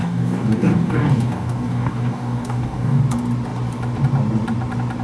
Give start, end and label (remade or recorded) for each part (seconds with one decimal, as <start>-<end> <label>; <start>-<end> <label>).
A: 0.0-3.0 remade; 3.0-5.0 recorded